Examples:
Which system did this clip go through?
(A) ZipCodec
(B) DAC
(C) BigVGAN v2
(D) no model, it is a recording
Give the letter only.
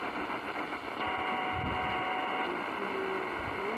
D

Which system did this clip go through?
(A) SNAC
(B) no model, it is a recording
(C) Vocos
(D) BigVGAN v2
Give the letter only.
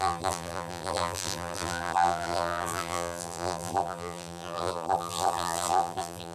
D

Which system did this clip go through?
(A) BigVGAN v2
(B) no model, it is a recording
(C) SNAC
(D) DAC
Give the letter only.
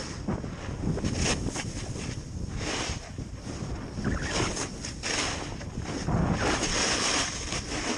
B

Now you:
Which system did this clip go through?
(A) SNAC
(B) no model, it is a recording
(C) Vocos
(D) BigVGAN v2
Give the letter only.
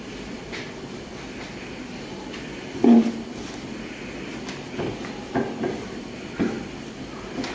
D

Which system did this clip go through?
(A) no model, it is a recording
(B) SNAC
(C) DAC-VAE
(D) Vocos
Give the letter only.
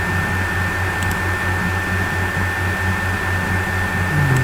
A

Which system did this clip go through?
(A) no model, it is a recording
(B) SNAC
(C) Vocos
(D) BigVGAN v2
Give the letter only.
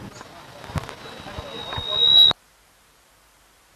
A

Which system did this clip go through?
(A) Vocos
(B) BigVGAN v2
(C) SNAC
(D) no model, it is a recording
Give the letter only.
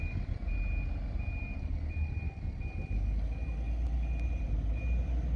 D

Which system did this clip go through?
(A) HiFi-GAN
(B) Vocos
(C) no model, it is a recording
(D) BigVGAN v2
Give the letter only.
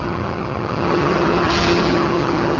A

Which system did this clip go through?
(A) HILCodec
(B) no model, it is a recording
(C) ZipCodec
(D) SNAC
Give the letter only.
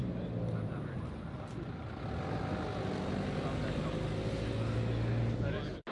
B